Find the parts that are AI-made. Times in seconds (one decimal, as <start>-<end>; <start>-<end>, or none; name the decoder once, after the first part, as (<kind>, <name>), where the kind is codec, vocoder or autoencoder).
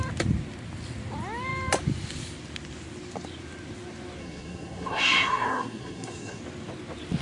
4.2-6.4 (codec, SNAC)